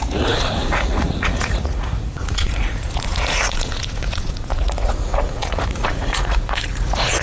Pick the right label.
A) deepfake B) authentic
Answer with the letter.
A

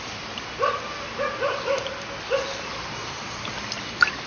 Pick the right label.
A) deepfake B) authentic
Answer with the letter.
B